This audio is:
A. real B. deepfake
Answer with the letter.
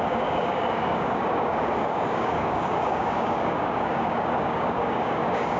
B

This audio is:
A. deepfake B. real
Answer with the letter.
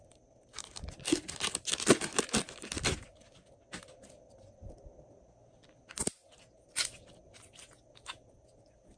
B